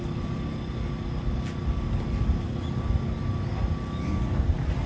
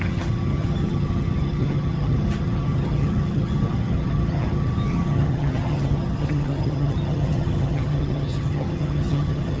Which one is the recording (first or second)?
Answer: first